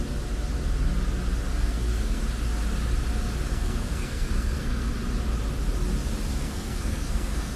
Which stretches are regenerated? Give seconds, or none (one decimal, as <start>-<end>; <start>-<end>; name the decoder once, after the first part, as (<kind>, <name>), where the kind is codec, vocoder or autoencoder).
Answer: 1.5-2.2 (codec, SNAC); 3.5-4.9; 6.3-7.6